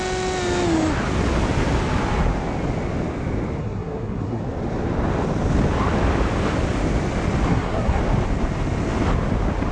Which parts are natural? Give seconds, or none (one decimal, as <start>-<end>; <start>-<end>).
0.0-3.6; 4.4-7.5; 8.0-9.7